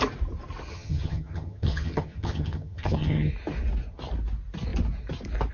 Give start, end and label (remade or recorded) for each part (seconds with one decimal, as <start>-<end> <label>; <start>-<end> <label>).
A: 0.0-0.7 recorded; 0.7-3.3 remade; 3.3-5.5 recorded